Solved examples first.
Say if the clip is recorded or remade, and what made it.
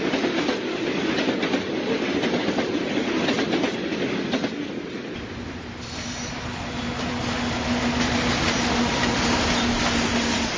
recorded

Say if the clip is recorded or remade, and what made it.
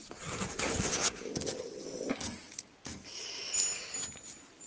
recorded